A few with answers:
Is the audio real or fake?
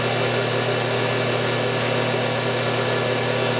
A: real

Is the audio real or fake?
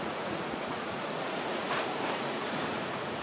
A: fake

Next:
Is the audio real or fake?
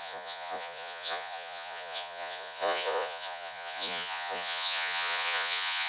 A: fake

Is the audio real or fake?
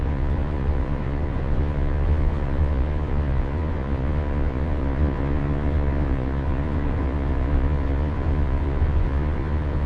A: fake